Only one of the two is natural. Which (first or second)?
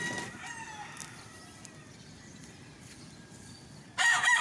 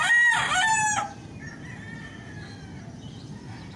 second